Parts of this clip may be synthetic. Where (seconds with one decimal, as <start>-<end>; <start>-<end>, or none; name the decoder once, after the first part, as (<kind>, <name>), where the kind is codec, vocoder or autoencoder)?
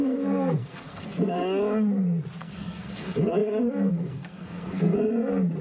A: 0.0-1.4 (codec, SNAC); 2.4-4.9